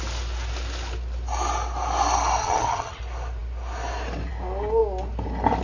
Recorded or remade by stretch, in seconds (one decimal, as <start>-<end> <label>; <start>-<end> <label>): 0.0-2.4 recorded; 2.4-3.0 remade; 3.0-5.6 recorded